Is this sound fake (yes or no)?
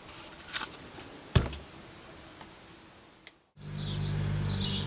no